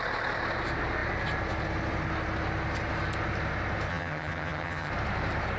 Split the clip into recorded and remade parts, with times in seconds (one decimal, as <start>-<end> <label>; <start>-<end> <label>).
0.0-3.9 recorded; 3.9-4.9 remade; 4.9-5.6 recorded